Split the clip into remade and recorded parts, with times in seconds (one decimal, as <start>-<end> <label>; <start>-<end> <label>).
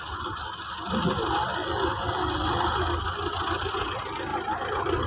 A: 0.0-1.6 recorded; 1.6-3.7 remade; 3.7-4.3 recorded; 4.3-5.1 remade